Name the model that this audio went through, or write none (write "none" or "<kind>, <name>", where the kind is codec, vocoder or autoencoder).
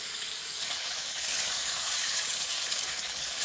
codec, DAC